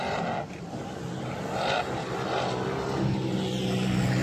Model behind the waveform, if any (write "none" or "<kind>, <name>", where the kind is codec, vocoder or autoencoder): none